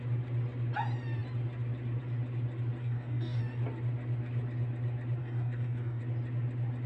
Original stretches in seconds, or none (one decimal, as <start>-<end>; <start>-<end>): 0.0-2.8; 3.4-5.2; 6.0-6.9